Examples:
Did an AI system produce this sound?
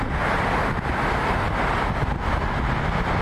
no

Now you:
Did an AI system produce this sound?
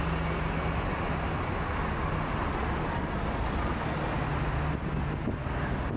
no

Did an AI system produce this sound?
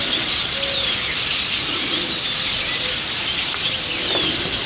no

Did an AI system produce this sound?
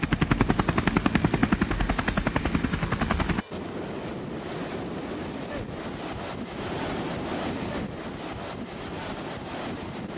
no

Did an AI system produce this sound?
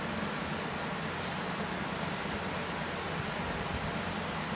no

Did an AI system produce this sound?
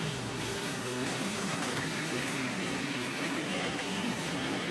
yes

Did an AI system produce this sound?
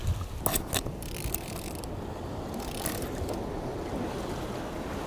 no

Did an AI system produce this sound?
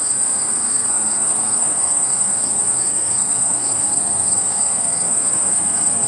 yes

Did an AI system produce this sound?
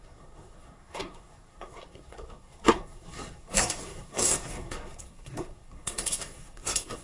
yes